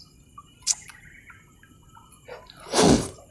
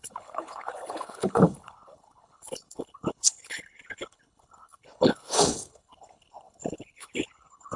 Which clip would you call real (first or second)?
first